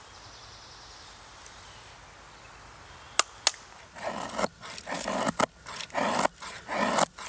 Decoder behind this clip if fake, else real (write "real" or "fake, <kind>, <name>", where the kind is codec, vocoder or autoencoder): real